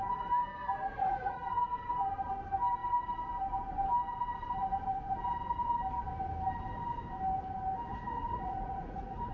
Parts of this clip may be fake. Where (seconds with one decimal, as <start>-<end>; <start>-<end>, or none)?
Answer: 0.9-1.6; 7.9-9.3